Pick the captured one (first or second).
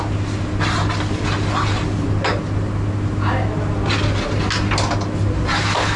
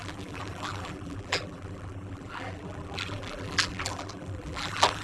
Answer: first